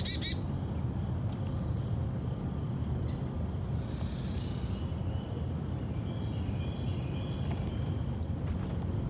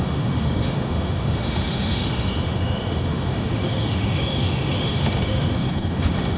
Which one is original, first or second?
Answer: first